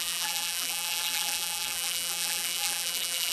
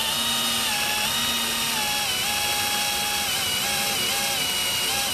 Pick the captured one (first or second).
second